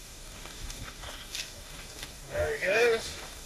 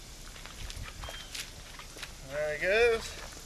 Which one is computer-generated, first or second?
first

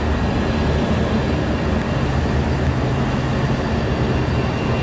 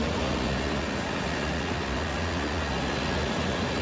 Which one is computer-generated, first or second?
second